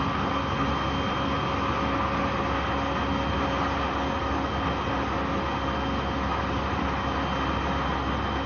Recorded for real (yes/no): yes